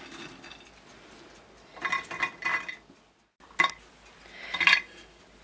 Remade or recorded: recorded